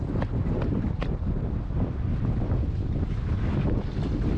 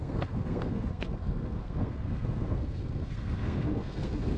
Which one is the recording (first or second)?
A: first